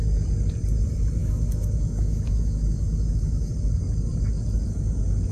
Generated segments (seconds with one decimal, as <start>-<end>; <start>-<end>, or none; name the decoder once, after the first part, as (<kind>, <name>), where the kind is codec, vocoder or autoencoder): 1.2-3.5 (autoencoder, DAC-VAE)